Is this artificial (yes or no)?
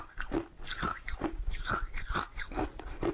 no